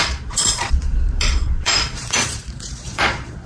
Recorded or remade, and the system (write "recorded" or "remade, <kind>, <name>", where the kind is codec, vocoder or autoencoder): remade, vocoder, Vocos